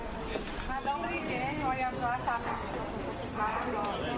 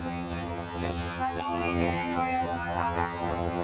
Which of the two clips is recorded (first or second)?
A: first